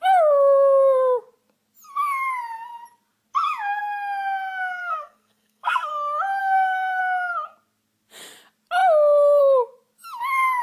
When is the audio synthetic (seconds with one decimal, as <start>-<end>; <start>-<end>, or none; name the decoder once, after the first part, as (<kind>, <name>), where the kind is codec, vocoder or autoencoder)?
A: 4.8-5.9 (codec, SNAC); 6.4-7.0